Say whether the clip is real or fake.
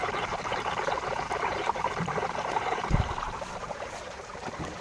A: fake